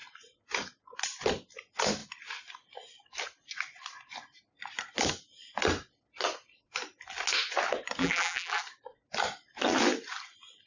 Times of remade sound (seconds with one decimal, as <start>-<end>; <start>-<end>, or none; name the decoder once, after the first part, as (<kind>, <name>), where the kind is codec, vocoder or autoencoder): 8.0-8.6 (vocoder, BigVGAN v2)